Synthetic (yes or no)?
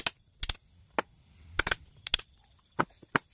no